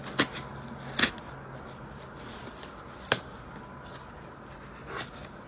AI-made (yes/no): no